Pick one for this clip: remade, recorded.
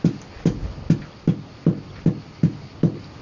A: recorded